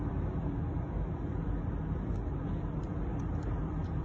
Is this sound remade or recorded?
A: recorded